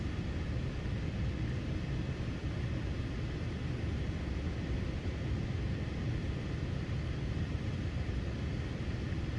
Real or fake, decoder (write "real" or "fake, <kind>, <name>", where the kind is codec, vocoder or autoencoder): real